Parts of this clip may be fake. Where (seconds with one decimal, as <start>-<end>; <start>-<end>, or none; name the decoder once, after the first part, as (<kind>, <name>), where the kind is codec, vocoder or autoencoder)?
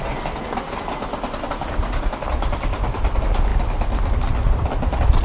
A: none